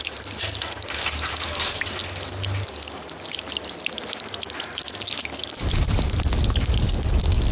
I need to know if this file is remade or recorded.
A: recorded